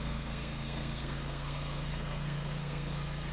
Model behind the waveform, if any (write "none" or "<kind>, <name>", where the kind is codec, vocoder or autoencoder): codec, SNAC